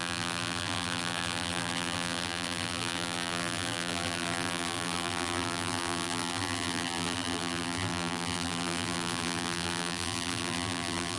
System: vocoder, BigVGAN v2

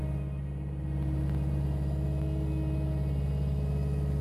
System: none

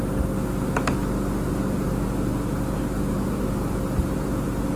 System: none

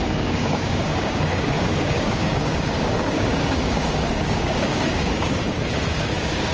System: codec, DAC